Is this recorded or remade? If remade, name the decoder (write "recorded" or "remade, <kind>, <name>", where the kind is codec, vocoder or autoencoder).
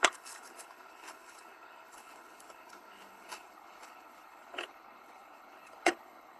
remade, codec, HILCodec